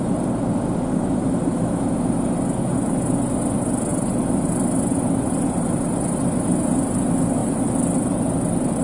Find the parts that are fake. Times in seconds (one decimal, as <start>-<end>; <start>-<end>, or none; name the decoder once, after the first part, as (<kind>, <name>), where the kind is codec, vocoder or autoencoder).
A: 3.9-4.5 (vocoder, BigVGAN v2); 7.4-8.8